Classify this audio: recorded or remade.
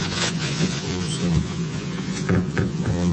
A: remade